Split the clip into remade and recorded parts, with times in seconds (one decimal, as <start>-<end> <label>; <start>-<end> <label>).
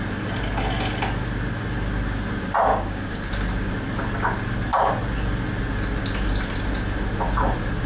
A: 0.0-2.7 recorded; 2.7-3.3 remade; 3.3-7.9 recorded